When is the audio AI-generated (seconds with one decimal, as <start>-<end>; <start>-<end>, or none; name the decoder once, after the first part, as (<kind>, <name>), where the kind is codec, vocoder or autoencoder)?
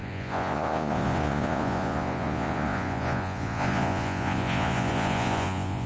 0.0-5.9 (vocoder, Vocos)